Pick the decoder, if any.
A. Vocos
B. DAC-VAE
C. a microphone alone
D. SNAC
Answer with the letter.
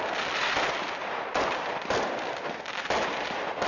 C